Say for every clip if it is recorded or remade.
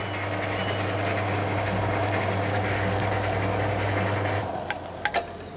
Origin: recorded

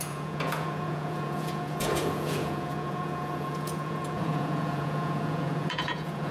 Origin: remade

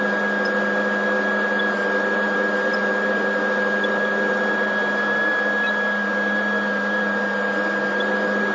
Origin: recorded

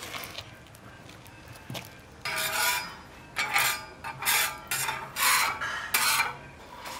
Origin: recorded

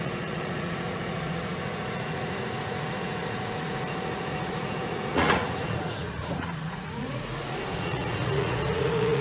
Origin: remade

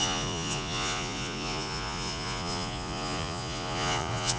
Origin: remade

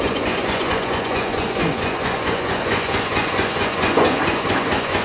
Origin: remade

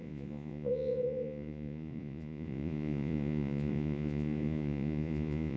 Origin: remade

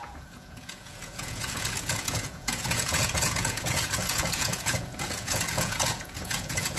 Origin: remade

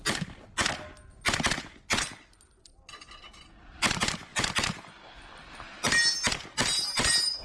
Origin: recorded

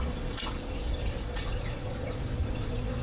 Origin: remade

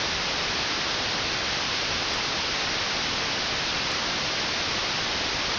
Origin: recorded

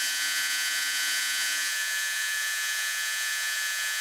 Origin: remade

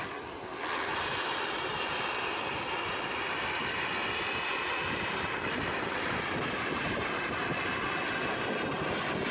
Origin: recorded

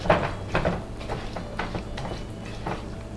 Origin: recorded